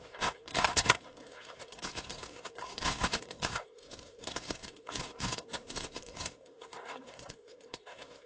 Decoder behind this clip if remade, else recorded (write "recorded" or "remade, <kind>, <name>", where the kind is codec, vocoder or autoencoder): remade, codec, SNAC